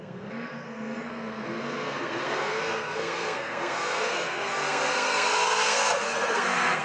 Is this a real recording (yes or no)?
no